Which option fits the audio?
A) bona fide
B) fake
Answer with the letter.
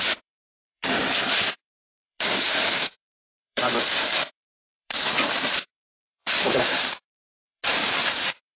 B